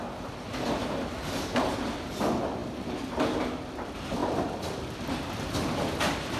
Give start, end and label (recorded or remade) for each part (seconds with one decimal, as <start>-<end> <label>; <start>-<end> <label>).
0.0-2.6 recorded; 2.6-3.1 remade; 3.1-4.2 recorded; 4.2-5.1 remade; 5.1-6.4 recorded